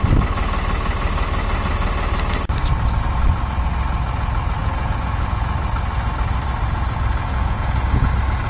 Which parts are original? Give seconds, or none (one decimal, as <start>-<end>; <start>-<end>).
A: 0.0-4.6; 5.5-7.3; 8.1-8.5